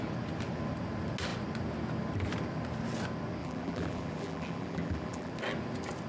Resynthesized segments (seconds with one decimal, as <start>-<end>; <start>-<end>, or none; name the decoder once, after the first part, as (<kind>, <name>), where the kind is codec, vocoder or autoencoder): 3.4-5.3 (vocoder, BigVGAN v2)